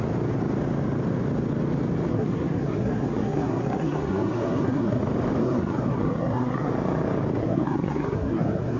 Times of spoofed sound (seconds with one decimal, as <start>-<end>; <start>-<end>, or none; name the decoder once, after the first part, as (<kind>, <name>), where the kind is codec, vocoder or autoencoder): 2.1-5.0 (codec, SNAC); 5.4-6.7; 7.4-8.8